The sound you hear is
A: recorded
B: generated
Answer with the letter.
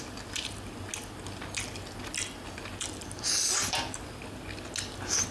A